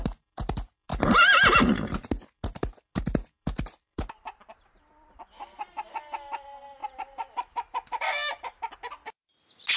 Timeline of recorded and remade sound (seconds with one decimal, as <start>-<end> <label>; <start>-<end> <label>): 0.0-0.9 recorded; 0.9-1.9 remade; 1.9-6.8 recorded; 6.8-8.7 remade; 8.7-9.8 recorded